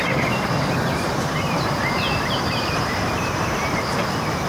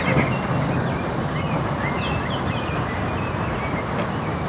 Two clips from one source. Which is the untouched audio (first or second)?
second